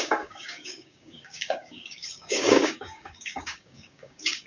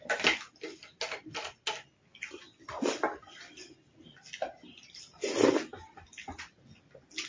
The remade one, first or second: first